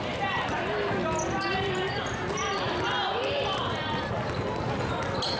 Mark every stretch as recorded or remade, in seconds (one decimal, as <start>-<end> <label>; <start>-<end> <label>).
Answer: 0.0-5.4 recorded